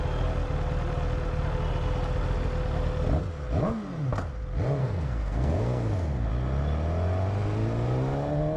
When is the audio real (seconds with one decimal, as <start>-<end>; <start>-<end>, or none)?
0.0-4.8; 6.3-8.6